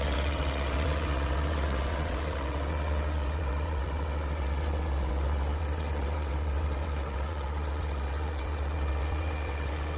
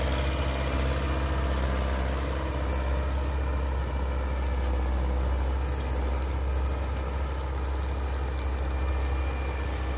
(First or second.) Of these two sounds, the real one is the second